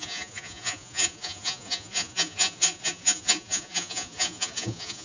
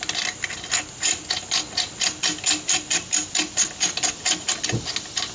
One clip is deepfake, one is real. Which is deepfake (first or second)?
first